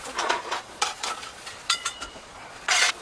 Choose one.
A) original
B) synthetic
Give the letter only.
B